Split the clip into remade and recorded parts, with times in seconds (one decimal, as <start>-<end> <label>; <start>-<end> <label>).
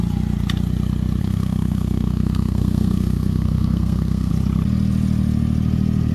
0.0-1.2 recorded; 1.2-4.3 remade; 4.3-6.1 recorded